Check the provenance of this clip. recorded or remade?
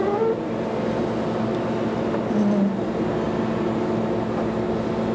recorded